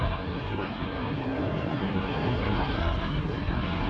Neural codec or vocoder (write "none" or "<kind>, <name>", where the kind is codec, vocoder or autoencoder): codec, SNAC